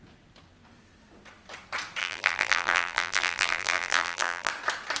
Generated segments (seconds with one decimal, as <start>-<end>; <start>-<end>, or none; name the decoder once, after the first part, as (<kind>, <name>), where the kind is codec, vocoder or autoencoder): 2.0-4.5 (vocoder, BigVGAN v2)

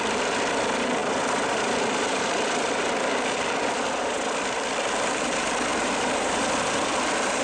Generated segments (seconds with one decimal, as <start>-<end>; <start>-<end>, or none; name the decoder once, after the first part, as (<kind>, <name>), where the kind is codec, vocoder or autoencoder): none

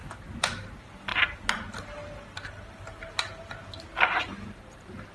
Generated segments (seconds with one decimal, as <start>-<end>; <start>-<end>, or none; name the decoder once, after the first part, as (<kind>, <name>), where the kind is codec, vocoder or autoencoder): 0.0-0.7 (vocoder, BigVGAN v2)

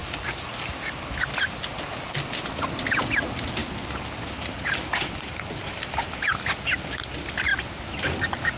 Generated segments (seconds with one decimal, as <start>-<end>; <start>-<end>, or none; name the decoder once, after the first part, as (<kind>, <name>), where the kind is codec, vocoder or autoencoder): 3.6-5.9 (vocoder, BigVGAN v2); 7.5-8.6

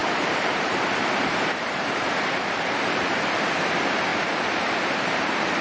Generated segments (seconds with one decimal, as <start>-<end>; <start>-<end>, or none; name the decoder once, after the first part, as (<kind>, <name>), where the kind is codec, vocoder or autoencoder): 0.0-3.4 (vocoder, BigVGAN v2); 4.1-5.6